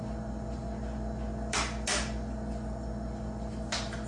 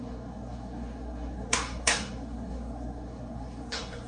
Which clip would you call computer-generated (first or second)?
second